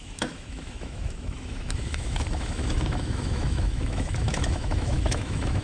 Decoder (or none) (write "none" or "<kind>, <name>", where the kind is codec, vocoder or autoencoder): autoencoder, DAC-VAE